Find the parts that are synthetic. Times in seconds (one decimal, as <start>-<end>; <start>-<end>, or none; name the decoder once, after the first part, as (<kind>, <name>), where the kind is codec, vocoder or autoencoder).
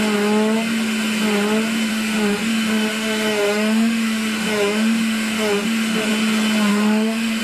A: 1.9-6.1 (autoencoder, DAC-VAE); 6.7-7.4